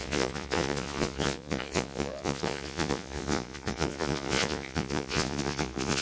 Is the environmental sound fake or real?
fake